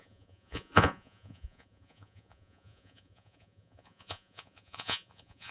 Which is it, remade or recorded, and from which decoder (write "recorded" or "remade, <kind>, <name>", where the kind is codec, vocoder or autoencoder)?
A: remade, vocoder, Vocos